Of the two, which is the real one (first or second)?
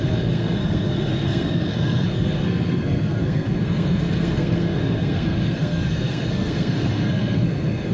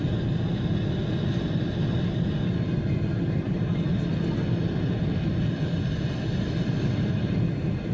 second